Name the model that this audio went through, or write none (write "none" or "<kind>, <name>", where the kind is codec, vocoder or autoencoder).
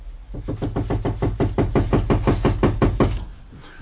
none